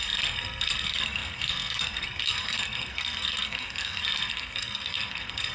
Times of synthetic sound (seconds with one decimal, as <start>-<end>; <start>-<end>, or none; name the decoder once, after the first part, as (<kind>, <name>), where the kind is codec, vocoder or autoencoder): 0.0-5.5 (codec, SNAC)